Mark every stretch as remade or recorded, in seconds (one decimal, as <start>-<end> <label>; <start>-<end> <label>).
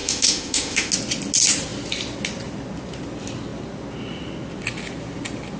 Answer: 0.0-0.9 remade; 0.9-5.6 recorded